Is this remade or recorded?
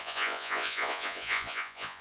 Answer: remade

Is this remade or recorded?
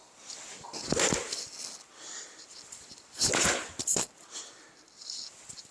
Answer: recorded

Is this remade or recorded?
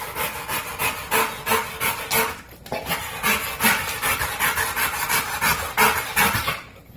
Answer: recorded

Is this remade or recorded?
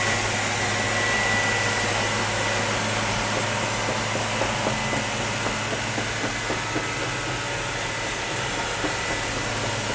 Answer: recorded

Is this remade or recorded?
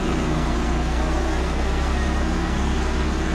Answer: remade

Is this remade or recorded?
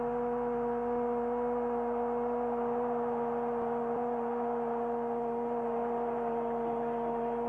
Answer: recorded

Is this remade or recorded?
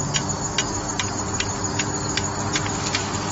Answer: recorded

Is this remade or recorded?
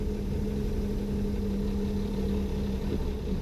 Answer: recorded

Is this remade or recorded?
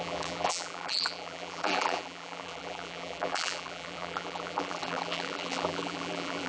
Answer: remade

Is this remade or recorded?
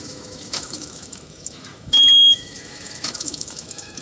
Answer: remade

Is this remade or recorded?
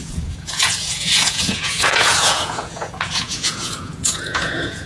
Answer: remade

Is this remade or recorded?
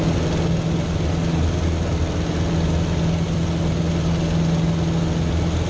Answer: recorded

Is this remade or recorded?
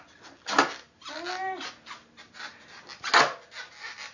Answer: recorded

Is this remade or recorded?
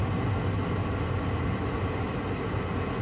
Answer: recorded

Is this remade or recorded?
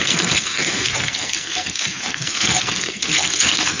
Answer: remade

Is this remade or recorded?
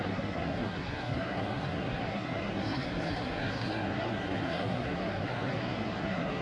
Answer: remade